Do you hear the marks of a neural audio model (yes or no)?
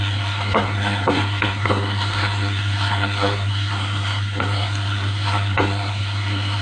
yes